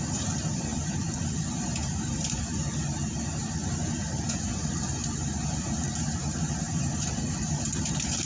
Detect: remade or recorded remade